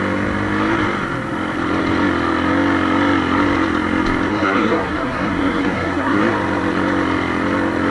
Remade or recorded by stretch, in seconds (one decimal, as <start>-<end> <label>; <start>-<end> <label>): 0.0-4.3 recorded; 4.3-6.2 remade; 6.2-7.9 recorded